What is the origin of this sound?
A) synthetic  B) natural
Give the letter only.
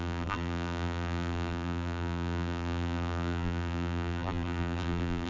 A